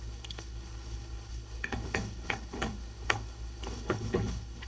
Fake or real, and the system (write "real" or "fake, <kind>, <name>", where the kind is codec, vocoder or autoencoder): fake, codec, HILCodec